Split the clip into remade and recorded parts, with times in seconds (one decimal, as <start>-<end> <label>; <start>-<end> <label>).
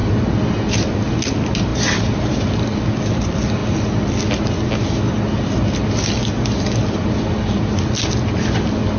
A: 0.0-9.0 recorded